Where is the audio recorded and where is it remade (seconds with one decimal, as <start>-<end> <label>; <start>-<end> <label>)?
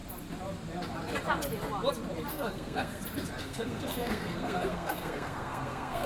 0.0-2.3 recorded; 2.3-3.0 remade; 3.0-3.4 recorded; 3.4-6.1 remade